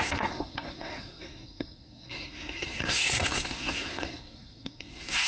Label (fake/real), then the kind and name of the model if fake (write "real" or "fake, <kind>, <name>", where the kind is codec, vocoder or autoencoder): fake, codec, SNAC